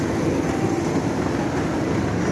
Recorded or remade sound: recorded